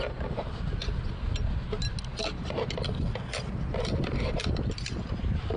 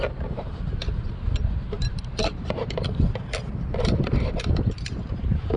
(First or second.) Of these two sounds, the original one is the first